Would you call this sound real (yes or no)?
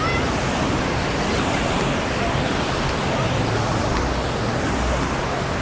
yes